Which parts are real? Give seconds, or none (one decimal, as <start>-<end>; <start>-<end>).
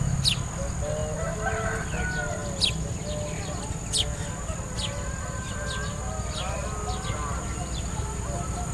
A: 0.0-8.7